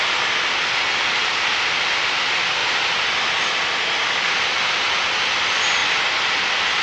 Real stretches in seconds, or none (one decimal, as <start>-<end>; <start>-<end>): 0.0-6.8

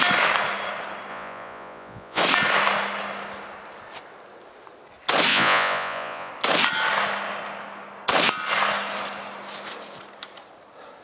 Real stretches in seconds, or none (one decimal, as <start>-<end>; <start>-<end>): 0.0-1.1; 2.2-5.3; 6.3-11.0

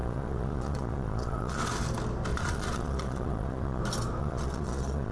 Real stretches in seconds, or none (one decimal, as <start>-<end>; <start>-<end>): 1.6-2.3; 3.8-4.2

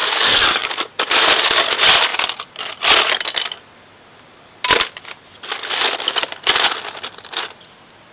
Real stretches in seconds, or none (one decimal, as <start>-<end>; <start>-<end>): 0.7-8.1

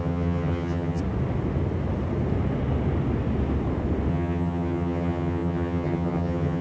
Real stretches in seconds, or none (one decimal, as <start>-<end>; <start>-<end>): 1.0-4.1

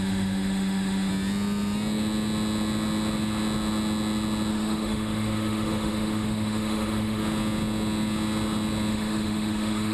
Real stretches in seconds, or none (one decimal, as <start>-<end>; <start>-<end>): 1.1-4.5; 7.2-8.9